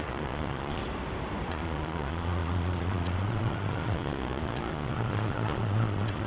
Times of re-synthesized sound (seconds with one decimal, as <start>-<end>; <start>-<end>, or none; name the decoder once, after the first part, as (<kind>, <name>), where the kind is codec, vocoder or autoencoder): 0.0-0.8 (vocoder, Vocos); 1.5-6.3